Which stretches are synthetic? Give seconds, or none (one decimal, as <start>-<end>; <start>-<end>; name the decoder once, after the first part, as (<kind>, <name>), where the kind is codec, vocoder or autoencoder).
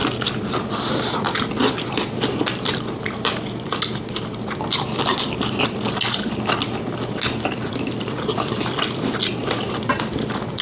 0.0-10.6 (vocoder, BigVGAN v2)